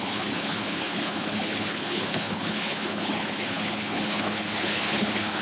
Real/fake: fake